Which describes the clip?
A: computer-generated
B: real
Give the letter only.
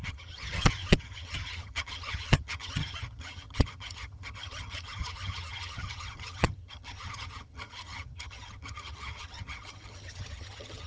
A